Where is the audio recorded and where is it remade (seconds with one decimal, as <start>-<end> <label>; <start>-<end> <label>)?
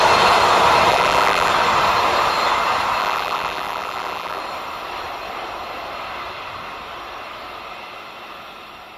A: 0.0-0.9 recorded; 0.9-1.5 remade; 1.5-3.0 recorded; 3.0-4.4 remade; 4.4-9.0 recorded